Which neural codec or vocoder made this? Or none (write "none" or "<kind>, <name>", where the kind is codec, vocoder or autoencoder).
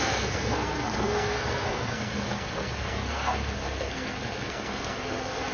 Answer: codec, SNAC